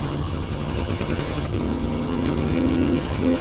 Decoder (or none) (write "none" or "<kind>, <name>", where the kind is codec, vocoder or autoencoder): vocoder, HiFi-GAN